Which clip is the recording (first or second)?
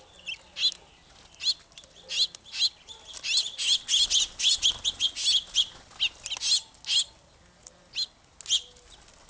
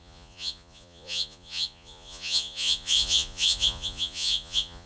first